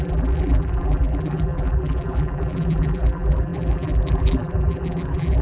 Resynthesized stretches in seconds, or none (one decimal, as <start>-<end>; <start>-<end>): 0.0-5.4